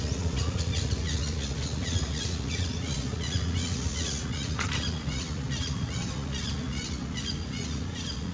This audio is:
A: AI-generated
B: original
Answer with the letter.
A